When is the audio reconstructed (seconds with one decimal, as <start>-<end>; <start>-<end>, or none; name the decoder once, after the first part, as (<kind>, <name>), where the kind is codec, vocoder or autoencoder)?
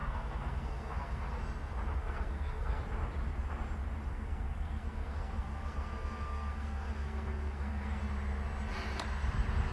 0.0-1.4 (codec, SNAC); 2.0-2.8; 4.1-8.0